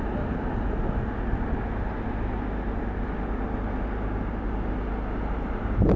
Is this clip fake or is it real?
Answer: real